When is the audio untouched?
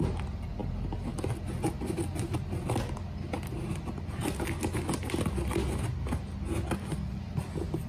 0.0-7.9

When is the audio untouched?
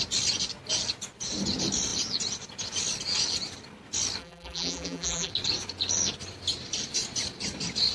0.0-4.2; 5.3-7.9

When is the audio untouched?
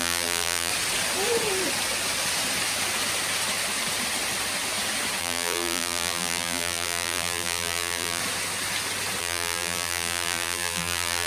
0.7-5.2; 8.2-9.2